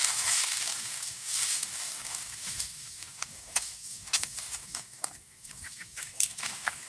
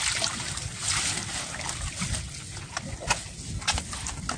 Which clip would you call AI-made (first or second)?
first